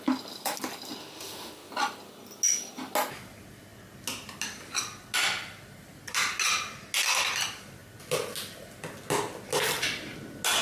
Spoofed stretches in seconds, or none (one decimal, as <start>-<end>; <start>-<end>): 1.0-1.7